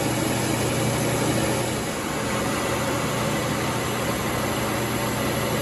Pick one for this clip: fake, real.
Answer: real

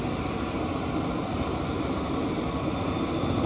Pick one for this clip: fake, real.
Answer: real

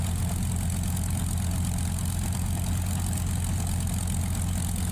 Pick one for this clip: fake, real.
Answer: real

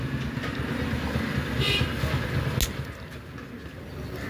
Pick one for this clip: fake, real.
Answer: real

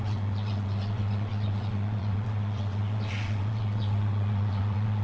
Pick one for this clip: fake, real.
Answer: fake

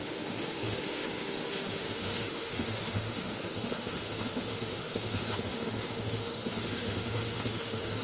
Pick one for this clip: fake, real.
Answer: fake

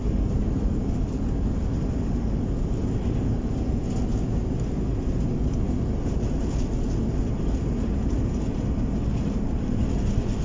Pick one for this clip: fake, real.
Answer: real